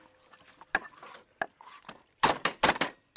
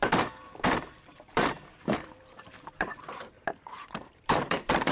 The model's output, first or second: second